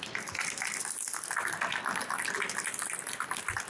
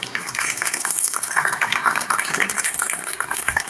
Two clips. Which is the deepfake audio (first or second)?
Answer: second